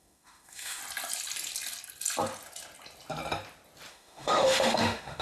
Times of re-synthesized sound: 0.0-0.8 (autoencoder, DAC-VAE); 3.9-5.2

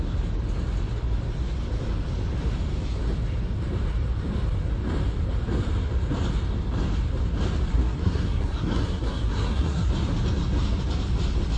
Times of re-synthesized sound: 7.7-9.9 (codec, SNAC)

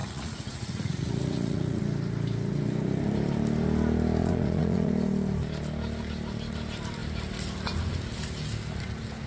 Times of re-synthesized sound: 0.0-1.8 (vocoder, Vocos); 4.2-4.9

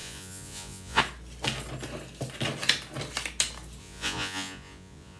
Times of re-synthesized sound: 0.0-1.0 (vocoder, Vocos); 3.8-5.2

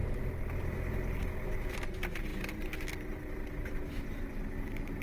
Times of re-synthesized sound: none